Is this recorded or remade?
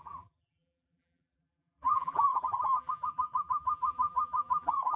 remade